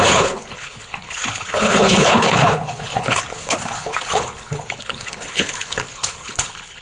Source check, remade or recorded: remade